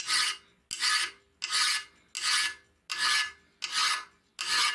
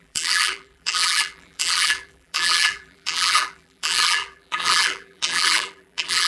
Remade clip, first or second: second